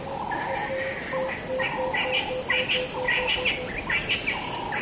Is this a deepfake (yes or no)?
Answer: no